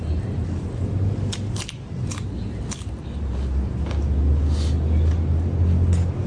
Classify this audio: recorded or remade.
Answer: recorded